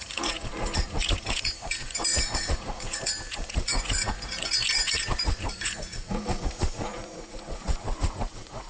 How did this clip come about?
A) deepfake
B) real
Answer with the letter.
A